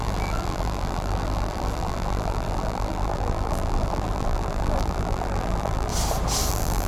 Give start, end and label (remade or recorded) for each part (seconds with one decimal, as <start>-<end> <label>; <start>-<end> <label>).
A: 0.0-5.9 remade; 5.9-6.5 recorded; 6.5-6.9 remade